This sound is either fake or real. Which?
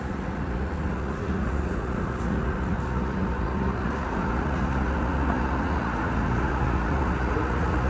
fake